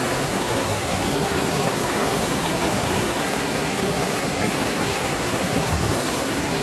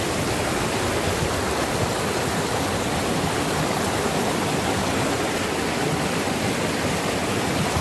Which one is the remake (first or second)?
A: first